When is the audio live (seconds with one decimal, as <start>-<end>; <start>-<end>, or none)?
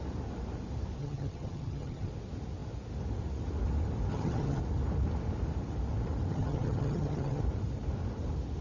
0.0-1.0; 2.1-4.1; 4.6-6.3; 7.4-8.6